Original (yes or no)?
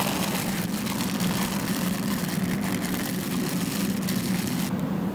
yes